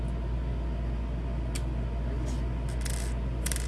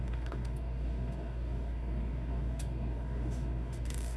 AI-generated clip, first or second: second